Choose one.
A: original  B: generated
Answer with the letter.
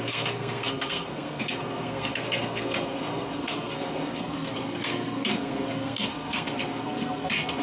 B